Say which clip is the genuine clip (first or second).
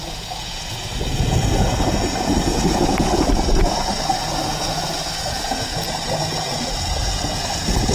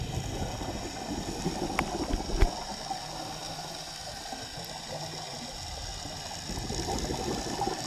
second